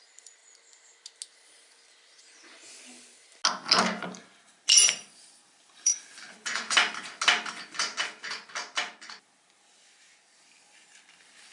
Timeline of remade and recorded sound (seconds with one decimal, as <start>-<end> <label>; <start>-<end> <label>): 0.0-0.4 remade; 0.4-4.0 recorded; 4.0-5.9 remade; 5.9-11.1 recorded; 11.1-11.5 remade